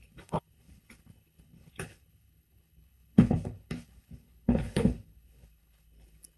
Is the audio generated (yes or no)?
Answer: yes